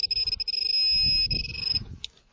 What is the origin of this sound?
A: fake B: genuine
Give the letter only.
B